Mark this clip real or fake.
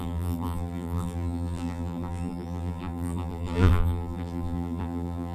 fake